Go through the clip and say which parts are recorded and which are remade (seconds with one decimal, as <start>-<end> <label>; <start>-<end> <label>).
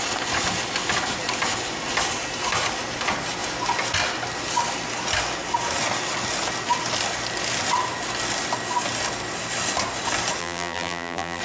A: 0.0-10.4 recorded; 10.4-11.4 remade